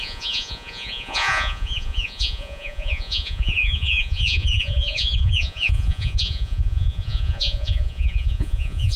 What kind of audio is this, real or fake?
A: fake